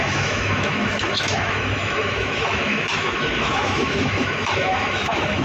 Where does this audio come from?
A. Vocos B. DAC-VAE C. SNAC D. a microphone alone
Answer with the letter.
B